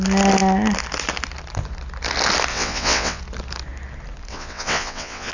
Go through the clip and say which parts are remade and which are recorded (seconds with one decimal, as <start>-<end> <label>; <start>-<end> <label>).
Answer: 0.0-2.5 recorded; 2.5-3.2 remade; 3.2-4.3 recorded; 4.3-5.3 remade